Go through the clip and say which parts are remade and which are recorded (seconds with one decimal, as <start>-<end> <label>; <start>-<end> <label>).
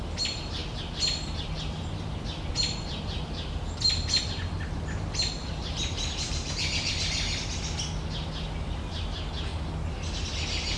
0.0-5.4 recorded; 5.4-6.9 remade; 6.9-10.8 recorded